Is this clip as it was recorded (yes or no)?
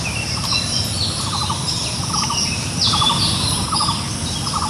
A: yes